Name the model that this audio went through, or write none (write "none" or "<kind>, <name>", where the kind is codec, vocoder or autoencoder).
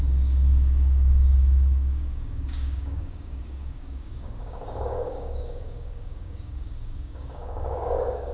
codec, DAC